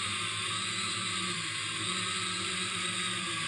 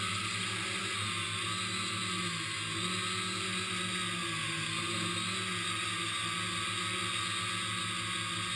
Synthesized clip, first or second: first